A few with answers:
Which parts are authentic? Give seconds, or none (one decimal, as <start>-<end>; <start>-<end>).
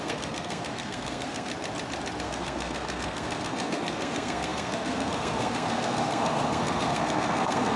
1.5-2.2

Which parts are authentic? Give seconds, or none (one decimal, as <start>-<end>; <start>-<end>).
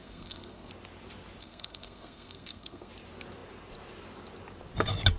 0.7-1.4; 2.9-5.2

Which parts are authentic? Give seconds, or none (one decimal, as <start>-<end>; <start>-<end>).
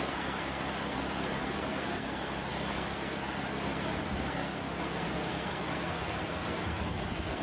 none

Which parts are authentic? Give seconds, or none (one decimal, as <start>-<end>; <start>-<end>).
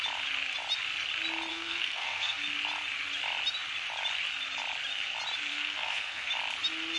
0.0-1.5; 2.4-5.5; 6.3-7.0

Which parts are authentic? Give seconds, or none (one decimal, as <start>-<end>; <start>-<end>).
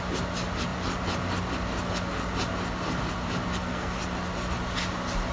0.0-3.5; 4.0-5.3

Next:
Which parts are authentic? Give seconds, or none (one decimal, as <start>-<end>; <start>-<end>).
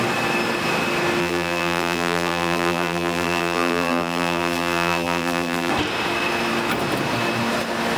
0.0-1.2; 5.7-8.0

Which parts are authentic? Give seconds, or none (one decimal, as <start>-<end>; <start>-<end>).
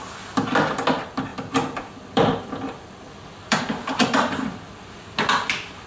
0.0-1.3; 4.8-5.9